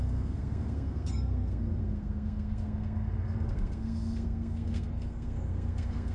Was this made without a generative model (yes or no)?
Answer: no